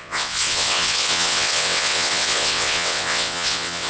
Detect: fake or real fake